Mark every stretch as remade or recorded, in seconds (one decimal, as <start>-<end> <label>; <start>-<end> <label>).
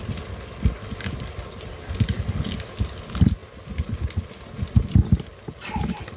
0.0-6.2 recorded